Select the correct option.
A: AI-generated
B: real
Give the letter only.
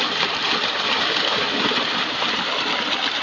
B